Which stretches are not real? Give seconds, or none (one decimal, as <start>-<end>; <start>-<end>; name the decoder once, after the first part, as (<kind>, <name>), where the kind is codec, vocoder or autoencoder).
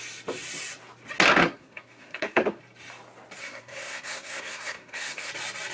1.4-2.6 (codec, SNAC); 3.4-5.3